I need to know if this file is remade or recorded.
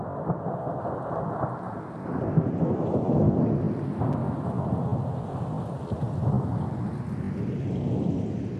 recorded